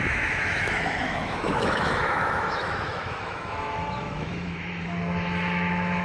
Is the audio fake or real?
fake